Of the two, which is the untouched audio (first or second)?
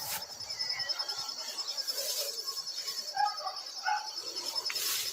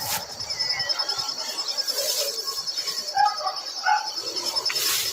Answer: second